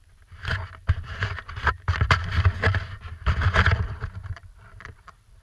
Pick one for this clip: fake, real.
fake